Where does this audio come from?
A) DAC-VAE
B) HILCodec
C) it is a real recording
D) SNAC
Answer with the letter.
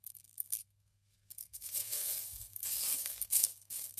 D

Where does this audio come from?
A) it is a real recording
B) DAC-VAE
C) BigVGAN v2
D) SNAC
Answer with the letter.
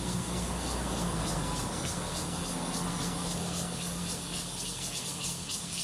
D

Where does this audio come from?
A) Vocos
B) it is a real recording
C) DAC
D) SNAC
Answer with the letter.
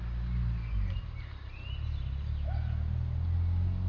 B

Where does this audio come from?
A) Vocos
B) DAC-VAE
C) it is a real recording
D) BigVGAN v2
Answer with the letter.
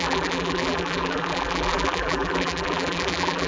D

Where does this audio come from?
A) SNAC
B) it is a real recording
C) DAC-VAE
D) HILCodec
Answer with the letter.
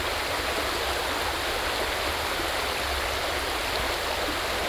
B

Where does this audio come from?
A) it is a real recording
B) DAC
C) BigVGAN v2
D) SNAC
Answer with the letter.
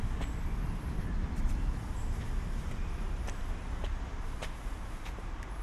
C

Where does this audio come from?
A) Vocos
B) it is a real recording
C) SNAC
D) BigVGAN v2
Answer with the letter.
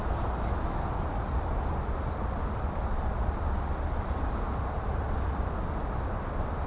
B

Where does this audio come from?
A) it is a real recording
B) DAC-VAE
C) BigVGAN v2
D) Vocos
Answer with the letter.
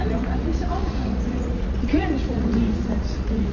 D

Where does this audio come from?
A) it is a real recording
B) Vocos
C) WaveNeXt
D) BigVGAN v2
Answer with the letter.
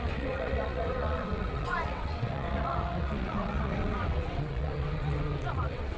C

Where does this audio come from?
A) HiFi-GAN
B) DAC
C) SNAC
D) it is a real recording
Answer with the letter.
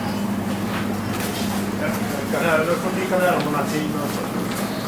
D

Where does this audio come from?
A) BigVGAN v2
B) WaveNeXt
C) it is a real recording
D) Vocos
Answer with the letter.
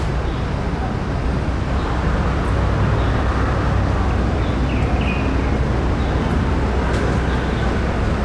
C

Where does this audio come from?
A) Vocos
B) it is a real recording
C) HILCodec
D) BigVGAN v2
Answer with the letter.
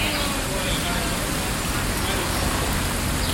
B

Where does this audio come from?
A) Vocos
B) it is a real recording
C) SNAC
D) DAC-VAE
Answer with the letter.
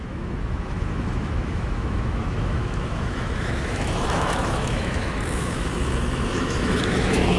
D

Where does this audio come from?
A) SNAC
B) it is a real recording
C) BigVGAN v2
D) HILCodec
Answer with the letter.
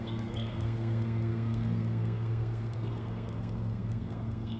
A